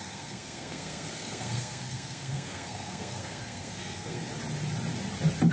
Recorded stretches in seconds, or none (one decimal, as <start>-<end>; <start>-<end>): 4.3-5.5